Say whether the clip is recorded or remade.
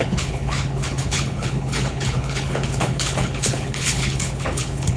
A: remade